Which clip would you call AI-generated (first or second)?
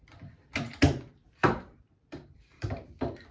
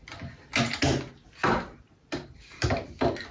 first